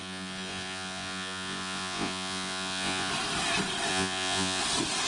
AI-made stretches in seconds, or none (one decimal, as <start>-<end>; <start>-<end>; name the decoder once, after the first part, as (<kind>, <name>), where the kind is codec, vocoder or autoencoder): 0.0-3.1 (vocoder, Vocos); 3.9-4.6